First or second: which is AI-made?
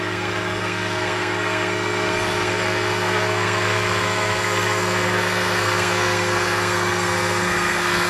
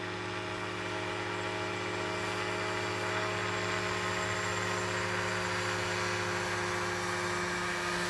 first